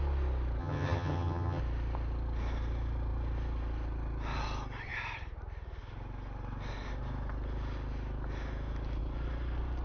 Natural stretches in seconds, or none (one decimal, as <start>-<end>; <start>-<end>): 0.0-0.6; 1.6-9.8